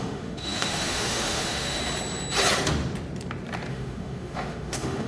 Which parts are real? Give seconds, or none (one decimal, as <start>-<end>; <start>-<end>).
1.8-3.7